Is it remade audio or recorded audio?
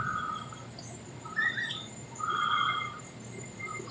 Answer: recorded